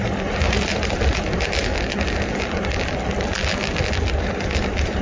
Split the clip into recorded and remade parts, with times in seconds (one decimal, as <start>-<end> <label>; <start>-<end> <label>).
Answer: 0.0-1.7 remade; 1.7-4.2 recorded; 4.2-5.0 remade